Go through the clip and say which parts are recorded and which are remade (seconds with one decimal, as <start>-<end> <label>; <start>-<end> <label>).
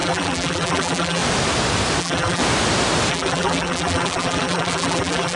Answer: 0.0-1.2 remade; 1.2-2.0 recorded; 2.0-2.4 remade; 2.4-3.1 recorded; 3.1-5.4 remade